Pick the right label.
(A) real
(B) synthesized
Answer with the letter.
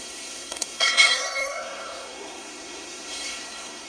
B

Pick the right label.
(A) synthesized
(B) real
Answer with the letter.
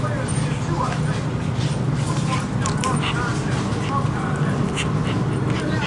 B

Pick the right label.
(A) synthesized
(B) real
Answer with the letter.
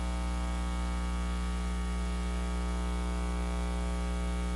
B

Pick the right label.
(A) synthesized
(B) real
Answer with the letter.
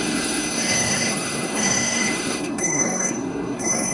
A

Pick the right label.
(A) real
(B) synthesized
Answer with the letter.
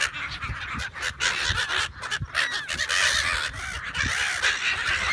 A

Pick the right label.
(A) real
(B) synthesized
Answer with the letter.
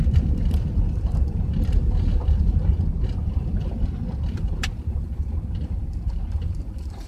B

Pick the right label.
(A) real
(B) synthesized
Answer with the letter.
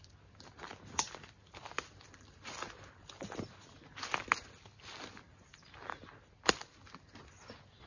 A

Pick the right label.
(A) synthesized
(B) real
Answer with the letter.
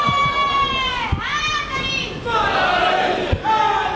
B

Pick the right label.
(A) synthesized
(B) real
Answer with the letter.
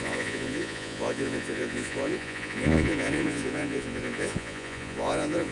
A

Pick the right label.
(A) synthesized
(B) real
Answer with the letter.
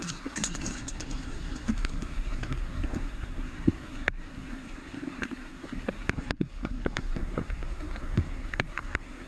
A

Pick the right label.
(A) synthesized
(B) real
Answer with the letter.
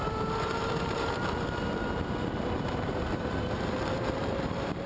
A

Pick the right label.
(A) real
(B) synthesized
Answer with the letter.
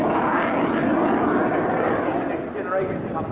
A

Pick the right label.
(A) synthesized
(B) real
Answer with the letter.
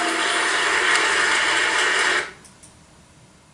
B